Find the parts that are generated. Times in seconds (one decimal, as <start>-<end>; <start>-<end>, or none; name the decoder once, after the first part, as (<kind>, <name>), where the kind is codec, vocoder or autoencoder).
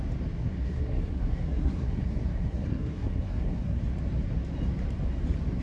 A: 0.4-3.8 (codec, SNAC)